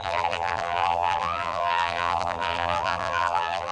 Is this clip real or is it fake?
fake